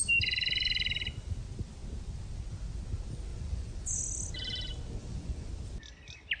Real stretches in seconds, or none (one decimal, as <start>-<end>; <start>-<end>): 0.0-3.3; 4.0-5.0; 5.5-6.4